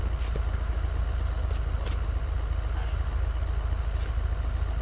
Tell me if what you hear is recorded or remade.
recorded